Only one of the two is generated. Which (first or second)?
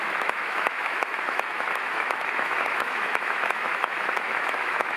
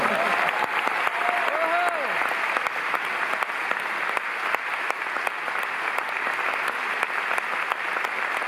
first